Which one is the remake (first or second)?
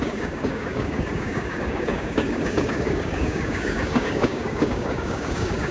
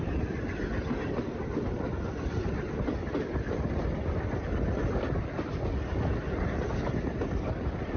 first